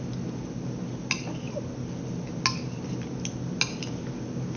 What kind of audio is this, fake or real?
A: real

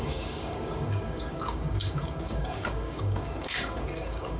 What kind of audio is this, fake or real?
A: fake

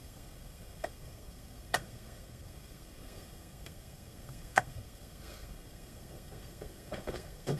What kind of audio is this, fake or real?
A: fake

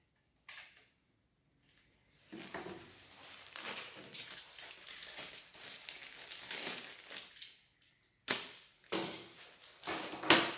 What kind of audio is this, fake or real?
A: real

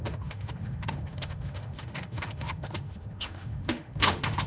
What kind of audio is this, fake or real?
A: fake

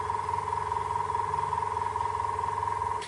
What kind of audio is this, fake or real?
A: real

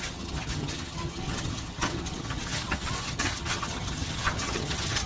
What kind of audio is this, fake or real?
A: fake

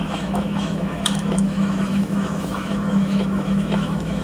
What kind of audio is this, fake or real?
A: fake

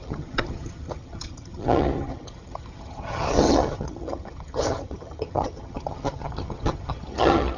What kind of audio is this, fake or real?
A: fake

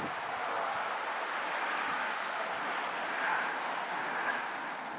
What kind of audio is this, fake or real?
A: real